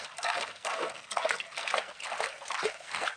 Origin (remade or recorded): remade